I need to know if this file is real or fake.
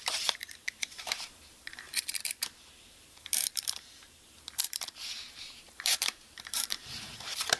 fake